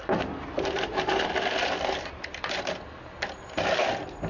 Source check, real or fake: real